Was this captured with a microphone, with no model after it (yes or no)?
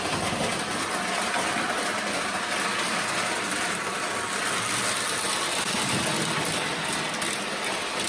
yes